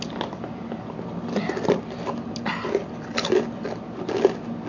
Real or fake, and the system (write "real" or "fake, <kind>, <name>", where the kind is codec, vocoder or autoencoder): real